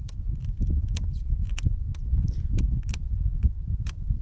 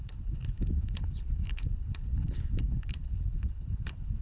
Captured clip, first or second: first